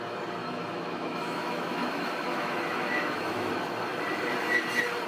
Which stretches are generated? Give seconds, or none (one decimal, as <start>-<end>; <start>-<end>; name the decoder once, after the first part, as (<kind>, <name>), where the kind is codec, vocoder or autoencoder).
0.4-3.5 (autoencoder, DAC-VAE)